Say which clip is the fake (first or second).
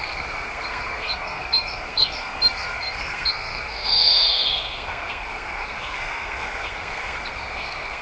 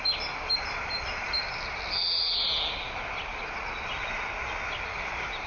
first